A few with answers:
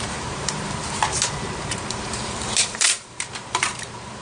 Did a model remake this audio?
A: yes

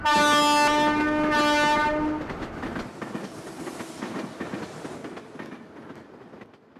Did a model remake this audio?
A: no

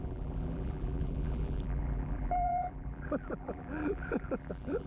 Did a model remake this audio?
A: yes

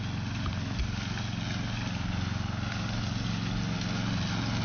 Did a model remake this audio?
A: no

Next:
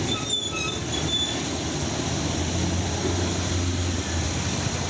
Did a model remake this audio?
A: no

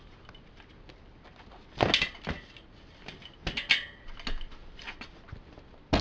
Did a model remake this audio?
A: no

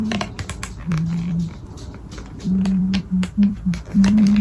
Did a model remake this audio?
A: yes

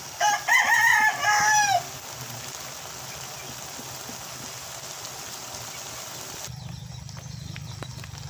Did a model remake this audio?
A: no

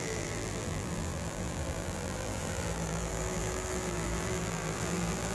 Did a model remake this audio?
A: yes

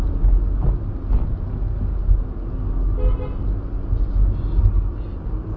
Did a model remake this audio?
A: no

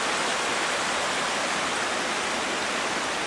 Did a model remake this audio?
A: no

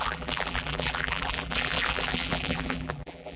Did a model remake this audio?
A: yes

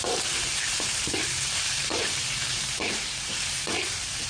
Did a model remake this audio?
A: yes